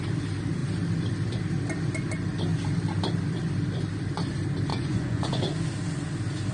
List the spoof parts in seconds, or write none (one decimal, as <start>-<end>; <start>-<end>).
4.7-5.4